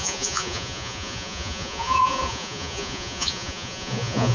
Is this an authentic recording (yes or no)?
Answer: no